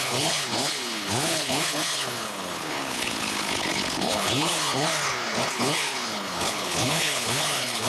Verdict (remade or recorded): remade